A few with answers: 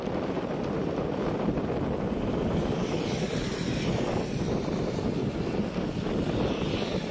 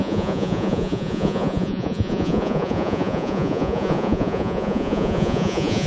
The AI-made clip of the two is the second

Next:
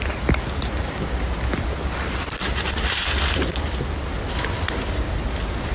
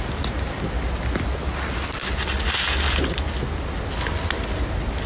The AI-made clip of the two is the first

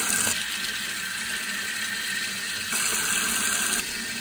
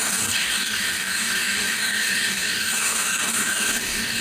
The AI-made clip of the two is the second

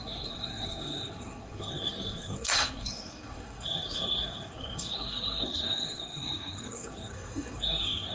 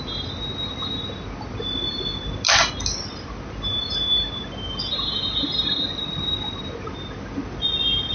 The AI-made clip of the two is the first